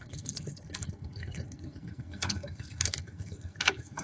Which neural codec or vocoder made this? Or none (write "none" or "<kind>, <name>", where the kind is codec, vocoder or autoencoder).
codec, SNAC